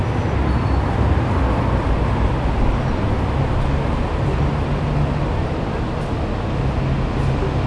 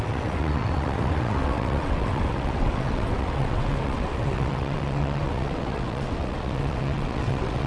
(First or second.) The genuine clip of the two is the first